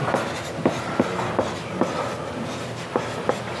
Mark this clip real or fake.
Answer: real